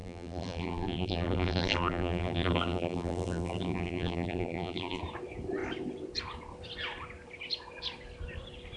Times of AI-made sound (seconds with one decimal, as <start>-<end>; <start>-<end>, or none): 0.0-5.0